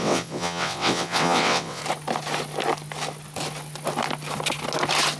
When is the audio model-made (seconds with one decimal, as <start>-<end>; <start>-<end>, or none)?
0.0-1.8